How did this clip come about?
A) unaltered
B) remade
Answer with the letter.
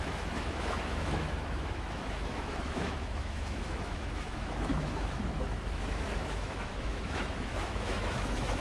B